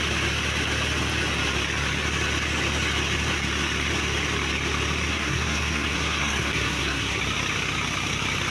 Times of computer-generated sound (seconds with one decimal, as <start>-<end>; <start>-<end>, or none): 5.1-7.2

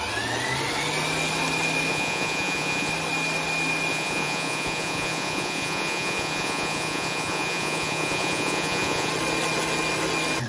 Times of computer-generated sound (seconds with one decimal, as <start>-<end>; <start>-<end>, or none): 1.9-2.9; 3.9-9.1

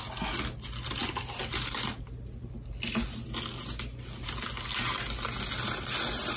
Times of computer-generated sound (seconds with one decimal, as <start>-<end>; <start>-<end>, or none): none

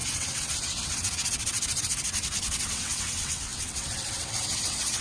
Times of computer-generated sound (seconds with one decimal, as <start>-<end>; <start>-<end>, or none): 0.0-5.0

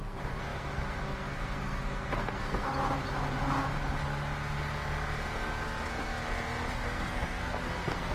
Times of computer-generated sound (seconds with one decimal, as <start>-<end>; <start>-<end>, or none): 0.0-2.7; 6.7-8.1

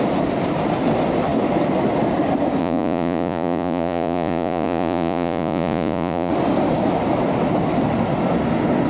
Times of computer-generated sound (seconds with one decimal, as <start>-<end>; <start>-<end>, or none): 2.6-6.3

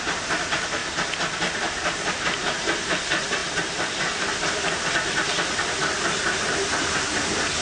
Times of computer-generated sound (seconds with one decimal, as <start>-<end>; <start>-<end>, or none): 0.0-0.8; 2.1-7.6

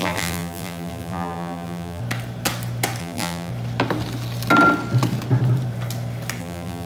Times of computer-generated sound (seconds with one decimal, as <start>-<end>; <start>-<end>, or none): 0.0-2.0; 3.0-3.5; 6.4-6.9